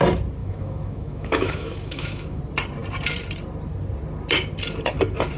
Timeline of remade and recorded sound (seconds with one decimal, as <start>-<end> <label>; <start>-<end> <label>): 0.0-0.4 recorded; 0.4-2.4 remade; 2.4-5.4 recorded